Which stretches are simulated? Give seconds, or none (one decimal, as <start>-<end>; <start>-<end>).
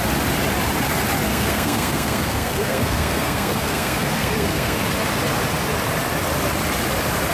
1.3-4.8